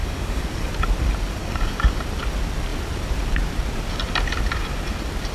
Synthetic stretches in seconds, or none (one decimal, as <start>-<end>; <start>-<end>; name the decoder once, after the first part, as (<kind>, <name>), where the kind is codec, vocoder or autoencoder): 0.0-0.7 (codec, DAC); 1.4-2.0